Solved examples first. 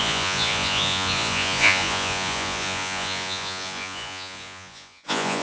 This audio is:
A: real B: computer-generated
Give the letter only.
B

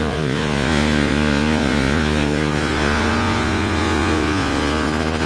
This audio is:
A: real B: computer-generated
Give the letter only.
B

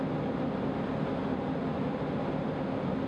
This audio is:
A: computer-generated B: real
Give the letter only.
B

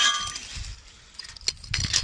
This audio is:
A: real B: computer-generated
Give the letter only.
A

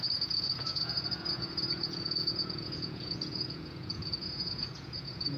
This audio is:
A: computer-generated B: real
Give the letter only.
A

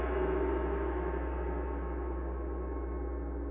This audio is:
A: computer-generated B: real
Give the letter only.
B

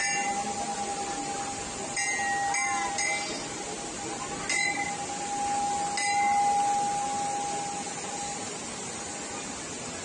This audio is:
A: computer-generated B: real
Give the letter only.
B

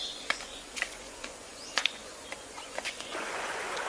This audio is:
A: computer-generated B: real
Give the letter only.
A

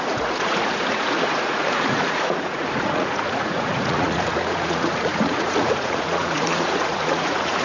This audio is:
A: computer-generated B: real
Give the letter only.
A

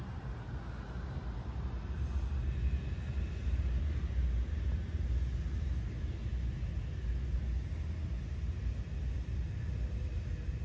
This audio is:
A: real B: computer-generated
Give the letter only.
A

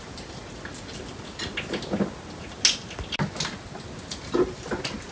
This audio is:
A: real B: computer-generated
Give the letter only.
A